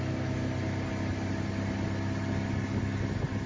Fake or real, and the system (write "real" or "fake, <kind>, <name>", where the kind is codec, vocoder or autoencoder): real